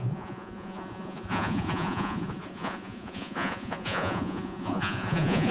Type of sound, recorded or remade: remade